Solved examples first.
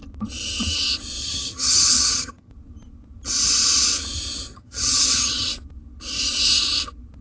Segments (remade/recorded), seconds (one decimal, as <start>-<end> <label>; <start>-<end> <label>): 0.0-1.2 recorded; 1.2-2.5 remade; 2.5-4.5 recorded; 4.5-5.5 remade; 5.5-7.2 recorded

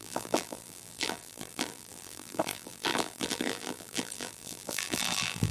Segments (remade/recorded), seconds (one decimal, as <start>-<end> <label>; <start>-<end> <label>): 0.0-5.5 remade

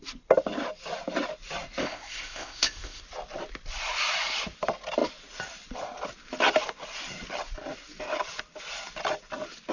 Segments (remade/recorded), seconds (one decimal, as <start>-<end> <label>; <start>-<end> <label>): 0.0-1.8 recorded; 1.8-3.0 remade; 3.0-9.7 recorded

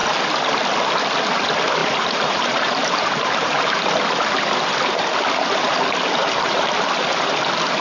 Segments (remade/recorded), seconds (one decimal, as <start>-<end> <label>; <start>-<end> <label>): 0.0-1.8 recorded; 1.8-3.8 remade; 3.8-6.2 recorded; 6.2-6.7 remade; 6.7-7.8 recorded

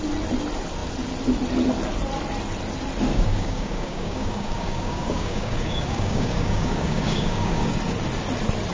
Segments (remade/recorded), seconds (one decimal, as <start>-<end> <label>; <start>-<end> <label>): 0.0-3.1 recorded; 3.1-7.8 remade; 7.8-8.7 recorded

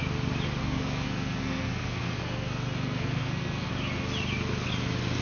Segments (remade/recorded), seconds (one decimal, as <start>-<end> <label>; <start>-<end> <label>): 0.0-0.6 recorded; 0.6-3.7 remade; 3.7-5.2 recorded